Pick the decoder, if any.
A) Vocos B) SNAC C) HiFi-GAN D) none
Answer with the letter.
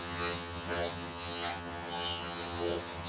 C